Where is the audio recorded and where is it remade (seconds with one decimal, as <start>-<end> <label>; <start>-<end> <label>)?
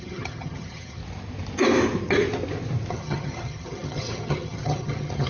0.0-1.0 remade; 1.0-2.9 recorded; 2.9-5.3 remade